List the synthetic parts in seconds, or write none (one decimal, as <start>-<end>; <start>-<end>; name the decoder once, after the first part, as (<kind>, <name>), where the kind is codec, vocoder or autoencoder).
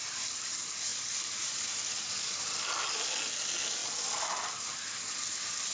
none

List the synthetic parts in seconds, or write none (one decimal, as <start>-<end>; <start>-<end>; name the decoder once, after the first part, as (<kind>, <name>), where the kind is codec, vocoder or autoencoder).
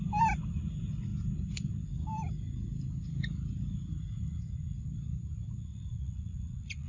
5.7-6.9 (vocoder, Vocos)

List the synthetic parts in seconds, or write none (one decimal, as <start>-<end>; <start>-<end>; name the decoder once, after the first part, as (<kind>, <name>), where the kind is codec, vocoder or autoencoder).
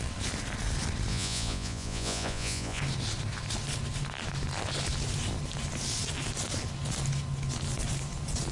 1.1-2.8 (vocoder, Vocos)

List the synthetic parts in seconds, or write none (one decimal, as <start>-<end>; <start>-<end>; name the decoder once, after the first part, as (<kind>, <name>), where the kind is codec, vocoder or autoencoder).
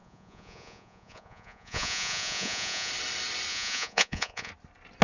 0.0-2.9 (vocoder, Vocos); 3.5-4.5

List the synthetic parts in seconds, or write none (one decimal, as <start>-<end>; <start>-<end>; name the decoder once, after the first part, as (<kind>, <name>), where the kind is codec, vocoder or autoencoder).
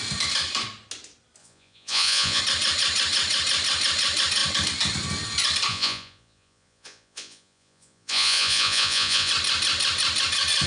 1.4-2.4 (vocoder, Vocos); 5.7-9.3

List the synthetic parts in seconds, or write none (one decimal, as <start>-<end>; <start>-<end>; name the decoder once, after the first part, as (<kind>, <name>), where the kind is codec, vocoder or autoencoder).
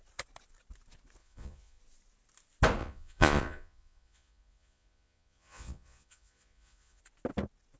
1.2-1.8 (vocoder, Vocos); 2.8-7.0